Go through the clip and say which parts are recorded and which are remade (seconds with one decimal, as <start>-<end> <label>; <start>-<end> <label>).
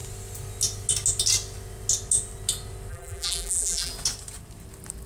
0.0-2.9 recorded; 2.9-3.9 remade; 3.9-5.1 recorded